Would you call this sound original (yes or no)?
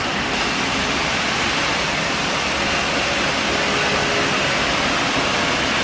yes